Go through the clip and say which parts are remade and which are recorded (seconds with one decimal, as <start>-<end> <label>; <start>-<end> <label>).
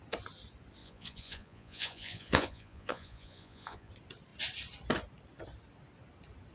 0.0-0.8 recorded; 0.8-3.9 remade; 3.9-6.5 recorded